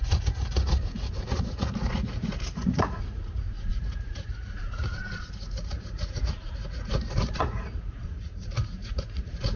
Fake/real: fake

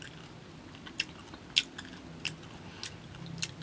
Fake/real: real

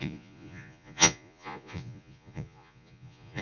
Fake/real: fake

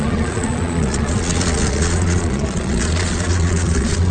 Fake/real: fake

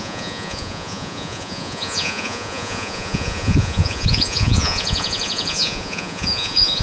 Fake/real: fake